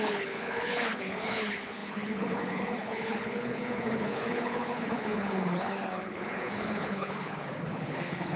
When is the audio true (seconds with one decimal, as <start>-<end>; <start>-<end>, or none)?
none